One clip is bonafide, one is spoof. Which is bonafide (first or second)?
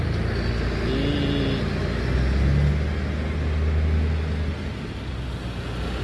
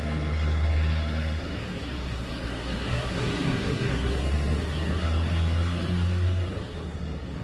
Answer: first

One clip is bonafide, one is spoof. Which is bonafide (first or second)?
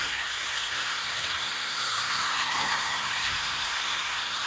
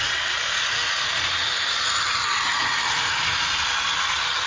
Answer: second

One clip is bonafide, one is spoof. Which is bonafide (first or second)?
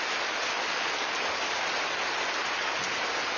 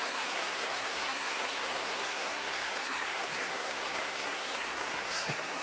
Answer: first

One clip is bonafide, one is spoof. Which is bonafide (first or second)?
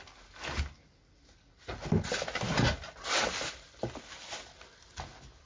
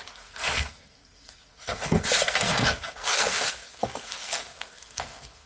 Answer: first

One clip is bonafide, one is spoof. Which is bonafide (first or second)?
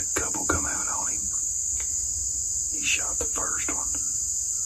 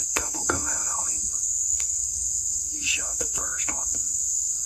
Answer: first